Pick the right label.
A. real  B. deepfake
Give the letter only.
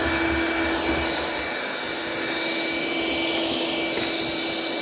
A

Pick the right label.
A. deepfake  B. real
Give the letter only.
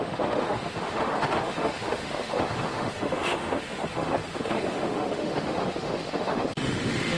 A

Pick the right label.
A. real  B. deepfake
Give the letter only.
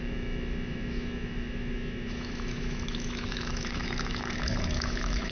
B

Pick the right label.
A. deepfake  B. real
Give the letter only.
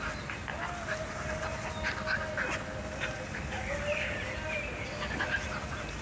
B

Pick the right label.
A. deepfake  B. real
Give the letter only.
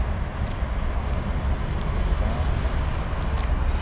B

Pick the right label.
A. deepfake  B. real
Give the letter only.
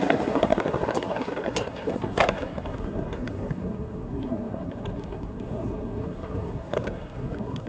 A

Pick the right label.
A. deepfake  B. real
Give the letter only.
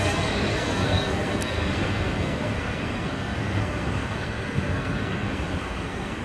A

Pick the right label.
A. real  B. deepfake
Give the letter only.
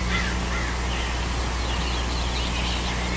A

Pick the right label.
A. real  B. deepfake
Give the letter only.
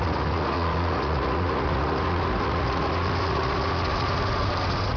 B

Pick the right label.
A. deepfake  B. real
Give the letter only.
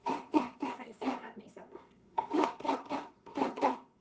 A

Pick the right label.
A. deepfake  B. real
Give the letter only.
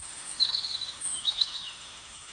A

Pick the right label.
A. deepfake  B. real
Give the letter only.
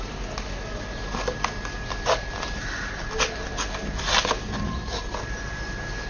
B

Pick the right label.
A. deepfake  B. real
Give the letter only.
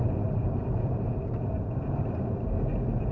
A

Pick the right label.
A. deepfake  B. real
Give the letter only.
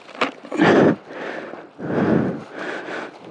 B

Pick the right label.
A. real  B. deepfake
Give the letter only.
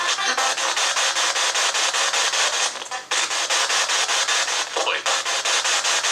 A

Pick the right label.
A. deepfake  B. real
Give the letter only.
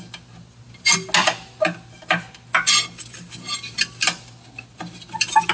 B